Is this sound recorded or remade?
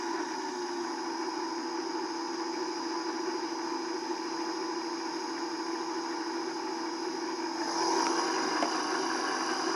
recorded